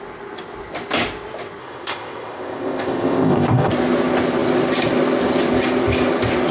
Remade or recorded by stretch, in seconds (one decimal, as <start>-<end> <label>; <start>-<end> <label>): 0.0-1.6 recorded; 1.6-3.7 remade; 3.7-6.5 recorded